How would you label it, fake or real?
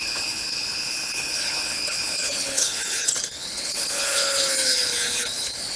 fake